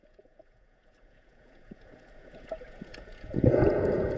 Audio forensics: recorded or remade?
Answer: remade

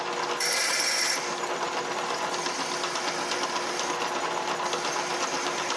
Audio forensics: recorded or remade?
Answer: recorded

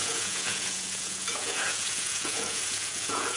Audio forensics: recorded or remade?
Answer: remade